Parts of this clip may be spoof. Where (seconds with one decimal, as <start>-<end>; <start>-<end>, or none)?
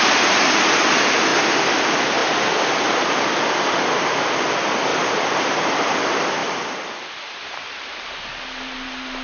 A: 1.3-1.8; 4.9-5.4; 6.4-7.9